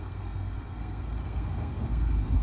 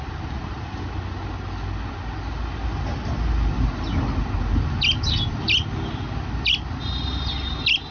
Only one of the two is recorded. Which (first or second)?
second